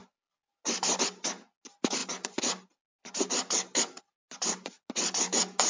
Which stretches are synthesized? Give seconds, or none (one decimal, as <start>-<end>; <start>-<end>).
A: none